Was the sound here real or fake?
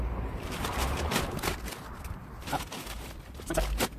real